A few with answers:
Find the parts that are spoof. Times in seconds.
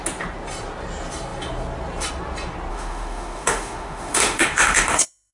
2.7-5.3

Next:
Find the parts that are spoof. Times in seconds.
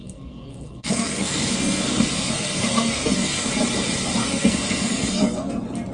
0.0-3.5; 4.2-5.5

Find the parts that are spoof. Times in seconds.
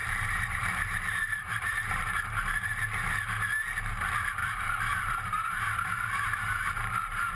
0.0-1.9; 4.4-6.4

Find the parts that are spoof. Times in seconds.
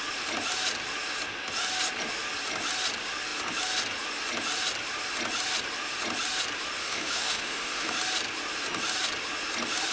6.8-7.9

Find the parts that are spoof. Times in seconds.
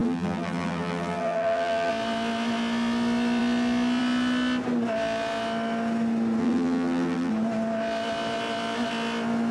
0.0-1.9; 6.4-7.3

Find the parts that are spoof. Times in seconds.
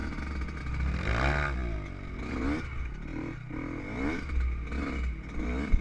none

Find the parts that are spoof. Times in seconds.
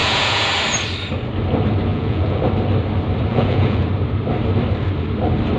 0.0-0.5; 1.9-2.4; 3.3-3.9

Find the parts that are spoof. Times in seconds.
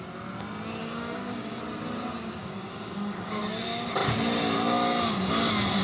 0.8-1.6; 2.4-3.4